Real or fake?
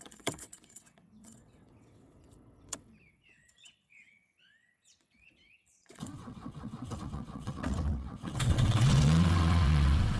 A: fake